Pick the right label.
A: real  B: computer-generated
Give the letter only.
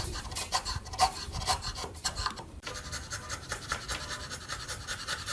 B